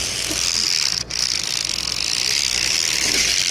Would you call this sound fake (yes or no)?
no